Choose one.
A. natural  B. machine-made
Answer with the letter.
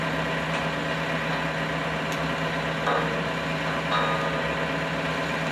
A